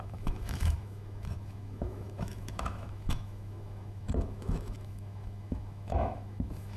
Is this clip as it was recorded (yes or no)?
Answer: no